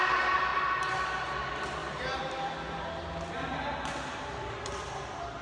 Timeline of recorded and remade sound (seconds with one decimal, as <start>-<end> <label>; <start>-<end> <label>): 0.0-5.4 recorded